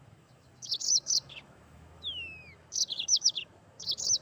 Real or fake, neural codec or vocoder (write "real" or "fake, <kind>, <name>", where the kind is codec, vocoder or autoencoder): fake, autoencoder, DAC-VAE